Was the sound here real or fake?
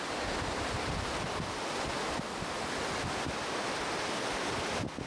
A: real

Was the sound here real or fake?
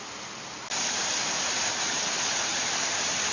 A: real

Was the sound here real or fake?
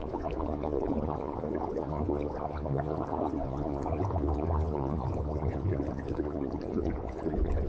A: fake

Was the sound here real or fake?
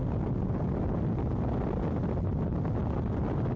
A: real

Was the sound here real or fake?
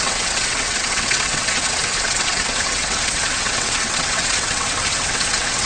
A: fake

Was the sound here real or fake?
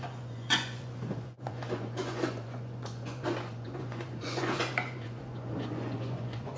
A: fake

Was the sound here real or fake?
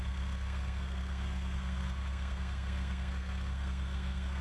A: fake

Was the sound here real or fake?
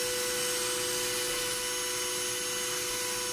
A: real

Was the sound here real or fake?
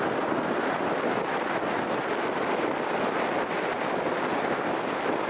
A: real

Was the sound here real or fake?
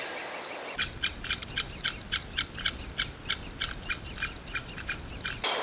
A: real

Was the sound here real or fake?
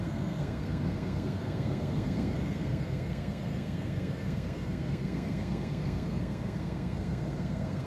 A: fake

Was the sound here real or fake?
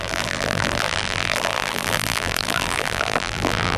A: fake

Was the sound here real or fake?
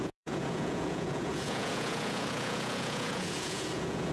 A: fake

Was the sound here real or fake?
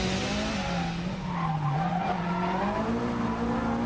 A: real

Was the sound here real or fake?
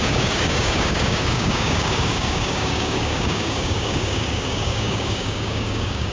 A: fake